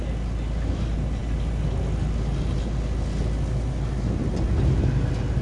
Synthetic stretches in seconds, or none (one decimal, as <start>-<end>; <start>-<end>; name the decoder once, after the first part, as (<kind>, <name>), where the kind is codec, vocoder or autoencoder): none